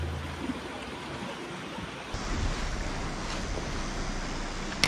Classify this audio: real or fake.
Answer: real